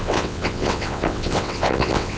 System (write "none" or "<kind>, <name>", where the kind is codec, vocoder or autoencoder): vocoder, WaveNeXt